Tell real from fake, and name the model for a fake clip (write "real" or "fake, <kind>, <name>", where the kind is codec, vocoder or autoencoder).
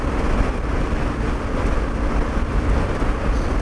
real